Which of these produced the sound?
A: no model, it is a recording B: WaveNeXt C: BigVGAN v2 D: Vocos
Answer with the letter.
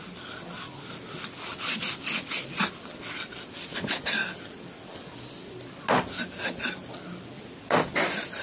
A